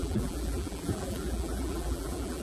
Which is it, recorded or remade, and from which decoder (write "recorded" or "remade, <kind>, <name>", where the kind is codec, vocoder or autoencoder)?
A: remade, vocoder, BigVGAN v2